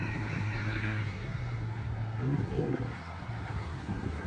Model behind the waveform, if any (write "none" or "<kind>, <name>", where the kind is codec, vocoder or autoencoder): codec, SNAC